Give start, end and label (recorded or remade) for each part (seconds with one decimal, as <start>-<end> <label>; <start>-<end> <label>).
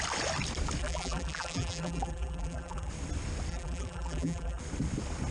0.0-0.8 recorded; 0.8-2.9 remade; 2.9-3.5 recorded; 3.5-4.6 remade; 4.6-5.3 recorded